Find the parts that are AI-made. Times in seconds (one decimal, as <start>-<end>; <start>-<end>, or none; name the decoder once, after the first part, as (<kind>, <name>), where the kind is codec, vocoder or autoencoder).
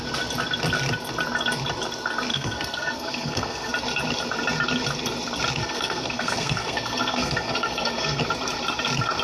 2.3-3.7 (codec, SNAC); 5.6-8.2